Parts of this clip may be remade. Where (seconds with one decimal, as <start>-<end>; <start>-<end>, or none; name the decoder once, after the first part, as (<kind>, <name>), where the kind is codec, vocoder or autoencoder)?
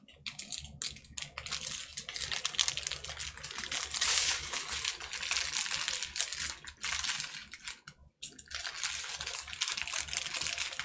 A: 4.1-4.6 (codec, DAC)